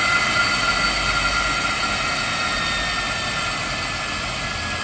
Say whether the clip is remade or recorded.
recorded